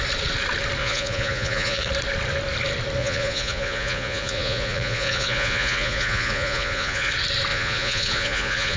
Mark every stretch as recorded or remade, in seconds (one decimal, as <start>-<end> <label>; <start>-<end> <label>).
0.0-0.8 recorded; 0.8-1.9 remade; 1.9-3.0 recorded; 3.0-7.1 remade; 7.1-7.5 recorded; 7.5-8.8 remade